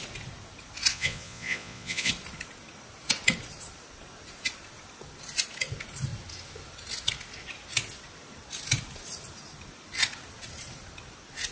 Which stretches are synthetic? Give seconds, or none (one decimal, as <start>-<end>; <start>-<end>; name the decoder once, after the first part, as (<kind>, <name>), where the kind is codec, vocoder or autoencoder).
0.9-2.1 (vocoder, Vocos)